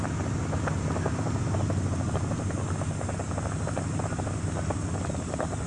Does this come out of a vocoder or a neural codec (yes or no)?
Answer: no